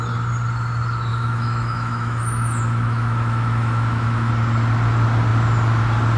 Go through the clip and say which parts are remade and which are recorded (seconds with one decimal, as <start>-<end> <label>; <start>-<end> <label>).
0.0-1.1 recorded; 1.1-4.3 remade; 4.3-6.2 recorded